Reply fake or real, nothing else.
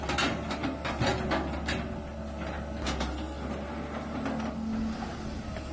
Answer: real